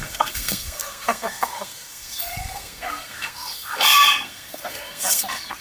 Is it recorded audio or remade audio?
remade